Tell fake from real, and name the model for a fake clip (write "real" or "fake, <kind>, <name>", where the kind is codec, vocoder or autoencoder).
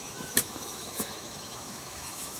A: fake, autoencoder, DAC-VAE